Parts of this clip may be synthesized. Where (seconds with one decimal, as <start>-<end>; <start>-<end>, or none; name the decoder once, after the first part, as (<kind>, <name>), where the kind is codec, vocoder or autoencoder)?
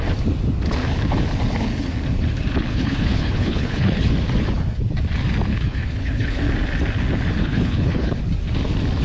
2.7-4.1 (codec, HILCodec); 5.5-6.4; 7.4-8.2